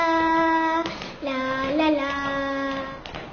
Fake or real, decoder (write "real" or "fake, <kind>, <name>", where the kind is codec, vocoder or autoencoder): real